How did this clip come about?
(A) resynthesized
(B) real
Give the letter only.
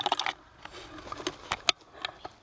B